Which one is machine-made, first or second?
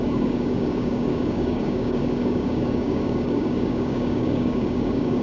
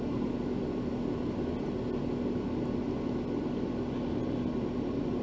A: first